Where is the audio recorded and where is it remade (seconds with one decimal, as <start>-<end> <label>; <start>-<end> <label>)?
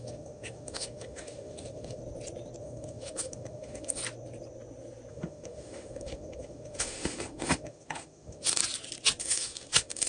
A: 0.0-2.0 remade; 2.0-2.6 recorded; 2.6-4.0 remade; 4.0-5.1 recorded; 5.1-8.6 remade; 8.6-9.2 recorded; 9.2-10.1 remade